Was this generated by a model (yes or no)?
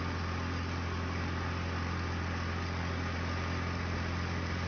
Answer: no